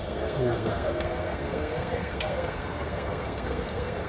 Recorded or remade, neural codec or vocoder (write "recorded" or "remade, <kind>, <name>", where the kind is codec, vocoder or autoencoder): remade, codec, SNAC